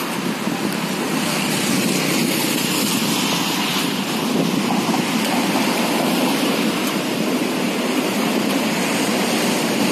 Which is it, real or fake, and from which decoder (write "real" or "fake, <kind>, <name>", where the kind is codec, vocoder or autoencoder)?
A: real